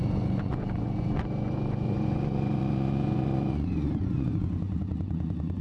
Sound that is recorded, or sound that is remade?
remade